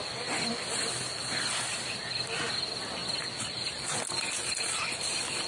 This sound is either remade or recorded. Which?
recorded